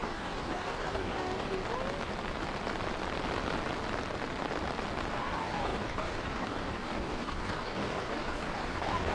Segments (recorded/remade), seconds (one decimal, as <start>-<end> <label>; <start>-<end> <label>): 0.0-1.6 remade; 1.6-5.1 recorded; 5.1-9.1 remade